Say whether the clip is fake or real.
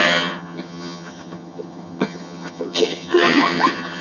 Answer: fake